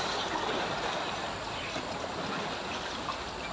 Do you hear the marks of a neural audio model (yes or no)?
no